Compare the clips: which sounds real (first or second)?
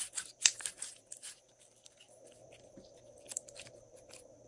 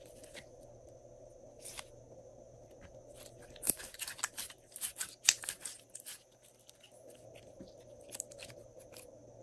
second